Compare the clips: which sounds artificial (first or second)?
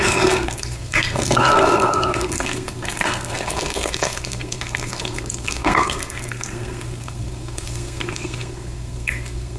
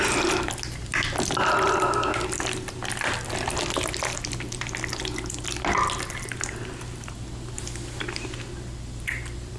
first